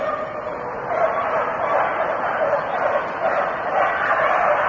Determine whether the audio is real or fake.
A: real